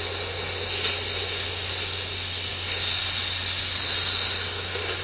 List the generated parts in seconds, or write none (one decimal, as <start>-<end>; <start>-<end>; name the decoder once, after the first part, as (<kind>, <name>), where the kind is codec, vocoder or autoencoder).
none